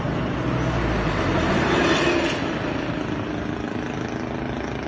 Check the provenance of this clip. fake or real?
real